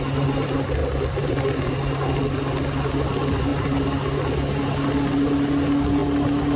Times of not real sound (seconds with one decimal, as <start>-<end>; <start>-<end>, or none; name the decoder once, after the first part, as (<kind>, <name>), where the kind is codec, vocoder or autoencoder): 0.8-1.7 (vocoder, BigVGAN v2)